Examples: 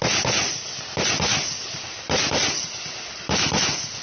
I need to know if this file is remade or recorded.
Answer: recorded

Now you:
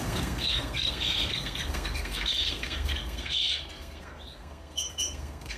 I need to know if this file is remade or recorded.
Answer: remade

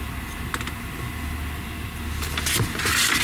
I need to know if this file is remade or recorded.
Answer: recorded